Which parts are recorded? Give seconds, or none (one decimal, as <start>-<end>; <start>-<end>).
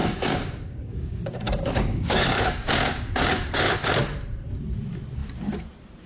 3.7-6.1